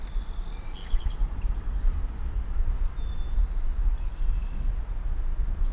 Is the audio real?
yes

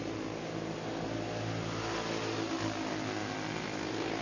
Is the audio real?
yes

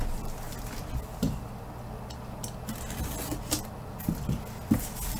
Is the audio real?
yes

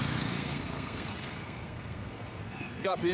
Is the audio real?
no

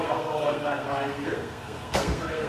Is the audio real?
no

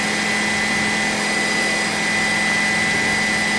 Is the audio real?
yes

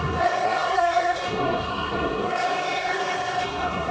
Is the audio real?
no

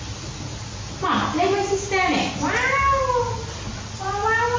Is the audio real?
yes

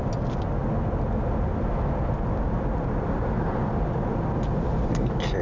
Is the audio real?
yes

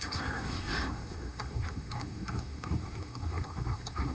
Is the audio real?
no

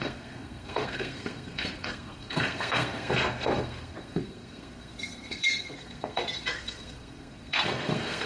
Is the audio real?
no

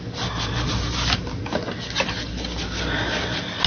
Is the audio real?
yes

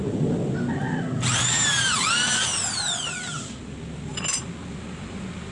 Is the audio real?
yes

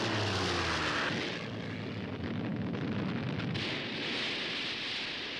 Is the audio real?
yes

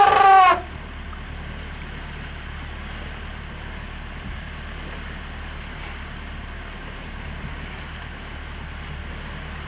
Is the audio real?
yes